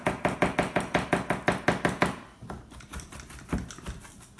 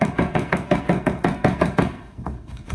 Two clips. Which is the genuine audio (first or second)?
first